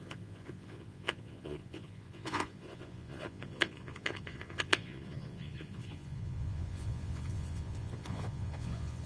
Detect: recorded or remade remade